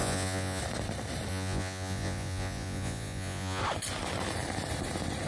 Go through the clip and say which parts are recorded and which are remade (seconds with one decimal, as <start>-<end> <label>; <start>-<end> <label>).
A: 0.0-0.6 remade; 0.6-1.3 recorded; 1.3-3.6 remade; 3.6-5.3 recorded